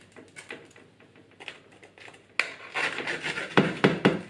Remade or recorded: recorded